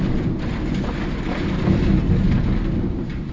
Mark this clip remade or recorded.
recorded